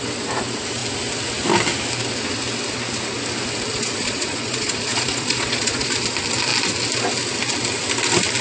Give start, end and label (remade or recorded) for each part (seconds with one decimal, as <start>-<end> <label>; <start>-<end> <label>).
0.0-3.7 recorded; 3.7-5.9 remade; 5.9-8.4 recorded